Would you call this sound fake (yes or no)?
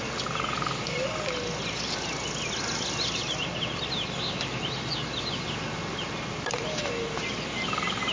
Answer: no